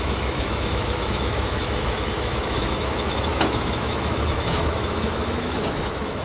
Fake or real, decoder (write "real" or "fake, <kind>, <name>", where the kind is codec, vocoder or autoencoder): fake, autoencoder, DAC-VAE